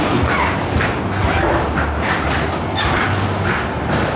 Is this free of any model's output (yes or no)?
yes